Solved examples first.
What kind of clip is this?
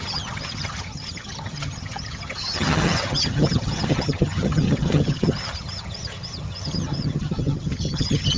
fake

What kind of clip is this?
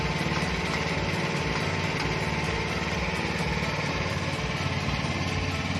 real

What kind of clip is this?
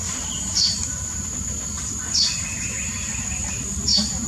fake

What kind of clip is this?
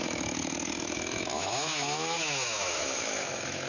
fake